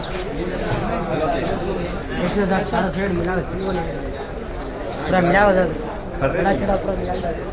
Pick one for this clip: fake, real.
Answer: real